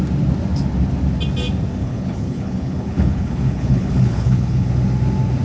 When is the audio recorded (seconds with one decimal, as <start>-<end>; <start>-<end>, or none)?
0.0-1.8; 4.7-5.4